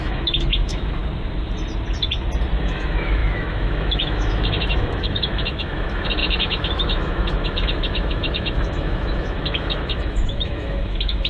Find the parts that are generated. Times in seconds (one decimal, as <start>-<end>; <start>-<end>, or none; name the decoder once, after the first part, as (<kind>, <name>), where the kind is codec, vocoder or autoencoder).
0.0-1.0 (autoencoder, DAC-VAE); 2.6-11.3